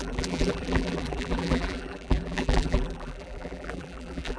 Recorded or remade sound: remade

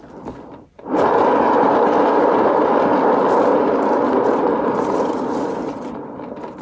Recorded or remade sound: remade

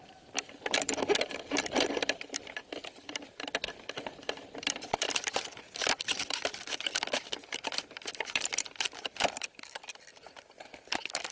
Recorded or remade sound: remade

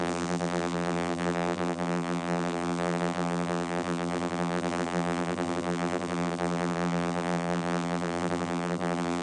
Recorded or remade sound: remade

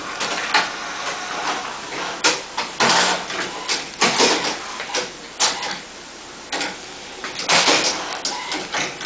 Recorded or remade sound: recorded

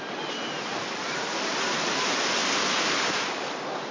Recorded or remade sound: recorded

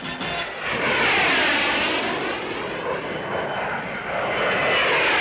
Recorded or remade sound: recorded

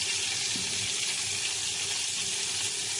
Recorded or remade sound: recorded